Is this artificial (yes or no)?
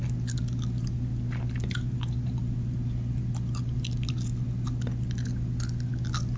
no